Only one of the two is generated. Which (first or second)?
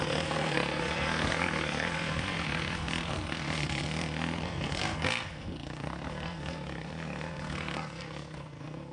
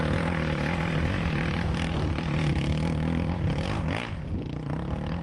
first